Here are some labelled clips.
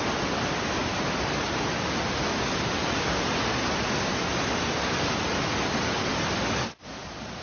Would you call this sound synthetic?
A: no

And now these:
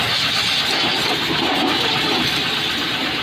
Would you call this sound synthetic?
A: no